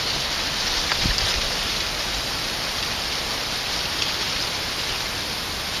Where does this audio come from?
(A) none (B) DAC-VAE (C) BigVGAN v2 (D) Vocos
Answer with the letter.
C